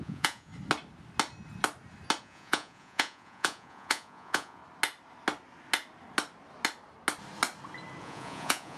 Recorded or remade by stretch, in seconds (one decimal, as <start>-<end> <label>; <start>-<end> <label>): 0.0-0.5 remade; 0.5-2.2 recorded; 2.2-4.6 remade; 4.6-8.0 recorded; 8.0-8.8 remade